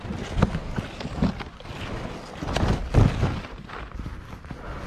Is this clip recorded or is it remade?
recorded